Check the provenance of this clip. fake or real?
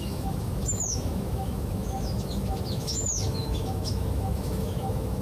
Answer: fake